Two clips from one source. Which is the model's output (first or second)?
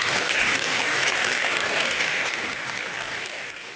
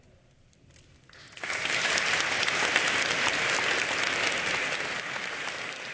first